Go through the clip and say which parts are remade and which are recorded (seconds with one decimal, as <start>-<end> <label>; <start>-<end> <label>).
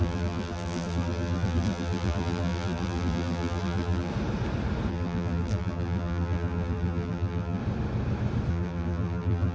0.0-4.1 remade; 4.1-4.9 recorded; 4.9-7.6 remade; 7.6-8.5 recorded; 8.5-9.5 remade